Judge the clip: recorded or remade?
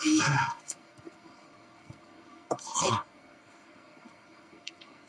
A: remade